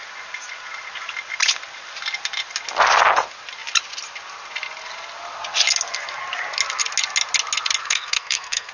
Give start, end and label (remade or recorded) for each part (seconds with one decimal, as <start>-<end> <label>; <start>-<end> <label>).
0.0-7.8 recorded; 7.8-8.7 remade